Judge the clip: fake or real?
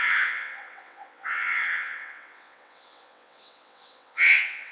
fake